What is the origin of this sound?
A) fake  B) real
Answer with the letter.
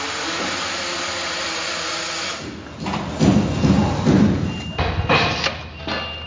B